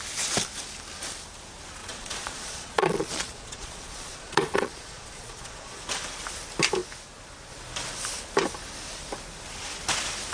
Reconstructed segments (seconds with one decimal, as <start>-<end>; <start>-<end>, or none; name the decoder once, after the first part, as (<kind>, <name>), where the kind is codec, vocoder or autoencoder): 1.8-5.8 (vocoder, Vocos)